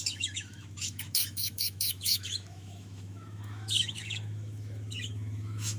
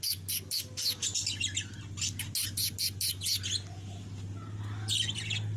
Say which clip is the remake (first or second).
first